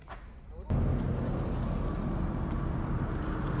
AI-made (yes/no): no